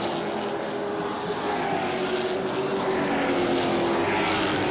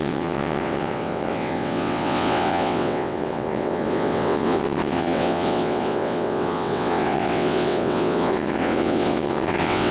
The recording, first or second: first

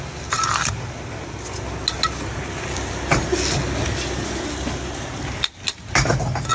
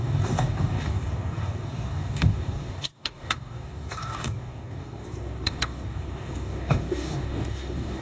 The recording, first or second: first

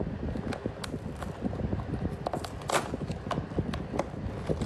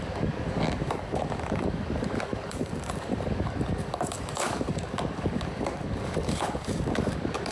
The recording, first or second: first